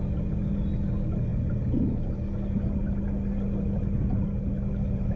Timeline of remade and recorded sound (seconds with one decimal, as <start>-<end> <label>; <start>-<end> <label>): 0.0-5.2 recorded

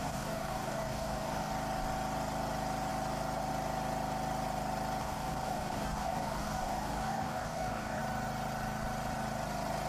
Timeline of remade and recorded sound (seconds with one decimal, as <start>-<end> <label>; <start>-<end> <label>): 0.0-1.5 remade; 1.5-5.0 recorded; 5.0-8.0 remade; 8.0-9.9 recorded

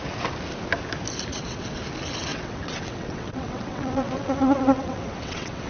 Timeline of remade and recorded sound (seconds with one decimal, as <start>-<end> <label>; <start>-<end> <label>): 0.0-1.3 recorded; 1.3-1.8 remade; 1.8-2.3 recorded; 2.3-5.7 remade

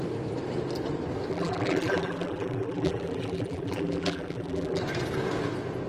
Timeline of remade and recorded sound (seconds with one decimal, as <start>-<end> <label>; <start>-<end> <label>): 0.0-1.3 recorded; 1.3-4.8 remade; 4.8-5.9 recorded

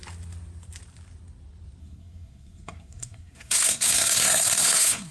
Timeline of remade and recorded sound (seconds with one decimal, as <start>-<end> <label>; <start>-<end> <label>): 0.0-1.8 recorded; 1.8-5.1 remade